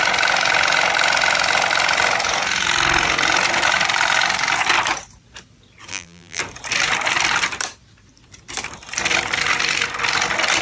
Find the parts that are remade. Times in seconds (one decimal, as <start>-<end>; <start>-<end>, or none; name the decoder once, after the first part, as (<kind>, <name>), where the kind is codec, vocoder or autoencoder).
5.9-6.4 (vocoder, BigVGAN v2)

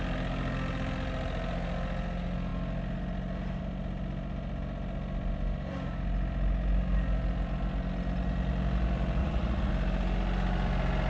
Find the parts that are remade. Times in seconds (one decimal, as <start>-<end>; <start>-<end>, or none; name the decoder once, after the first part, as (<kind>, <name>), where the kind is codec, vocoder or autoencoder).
9.2-9.7 (vocoder, Vocos)